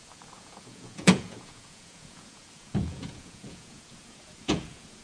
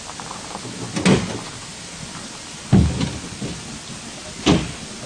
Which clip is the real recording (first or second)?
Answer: second